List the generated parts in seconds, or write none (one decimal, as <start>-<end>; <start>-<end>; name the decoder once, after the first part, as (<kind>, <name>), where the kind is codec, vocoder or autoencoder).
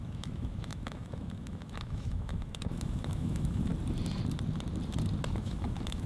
0.0-3.7 (autoencoder, DAC-VAE); 5.3-6.1